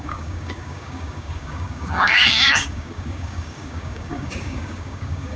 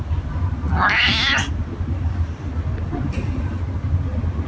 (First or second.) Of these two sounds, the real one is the second